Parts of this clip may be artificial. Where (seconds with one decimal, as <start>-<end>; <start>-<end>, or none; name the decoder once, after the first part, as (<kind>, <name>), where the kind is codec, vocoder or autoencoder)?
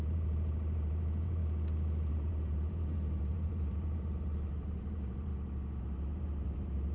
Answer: 0.0-1.4 (vocoder, BigVGAN v2); 2.1-5.3; 5.8-6.9